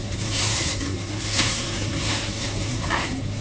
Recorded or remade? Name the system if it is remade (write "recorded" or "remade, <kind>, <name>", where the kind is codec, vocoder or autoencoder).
remade, codec, SNAC